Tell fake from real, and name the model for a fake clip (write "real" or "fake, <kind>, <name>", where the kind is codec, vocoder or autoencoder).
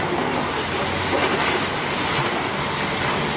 real